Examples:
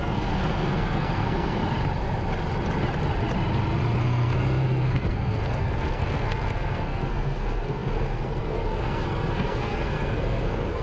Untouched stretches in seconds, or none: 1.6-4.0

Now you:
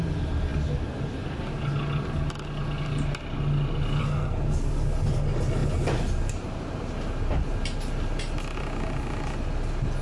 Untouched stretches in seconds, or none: 0.0-4.0; 4.7-10.0